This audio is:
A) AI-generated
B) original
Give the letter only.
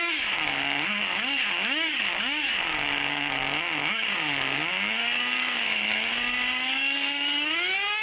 A